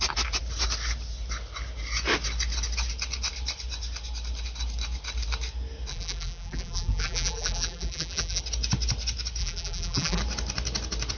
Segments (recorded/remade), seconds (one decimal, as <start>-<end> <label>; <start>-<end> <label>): 0.0-5.9 recorded; 5.9-8.4 remade; 8.4-9.4 recorded; 9.4-10.2 remade; 10.2-11.2 recorded